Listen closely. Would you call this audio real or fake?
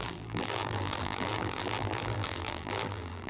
fake